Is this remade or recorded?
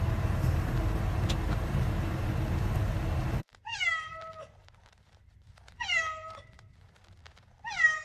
remade